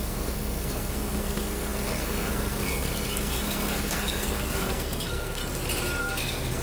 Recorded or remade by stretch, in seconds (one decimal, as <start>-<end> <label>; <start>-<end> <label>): 0.0-5.4 remade; 5.4-6.0 recorded; 6.0-6.6 remade